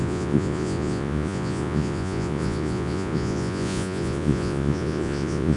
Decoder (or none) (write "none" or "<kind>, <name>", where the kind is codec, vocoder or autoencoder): vocoder, Vocos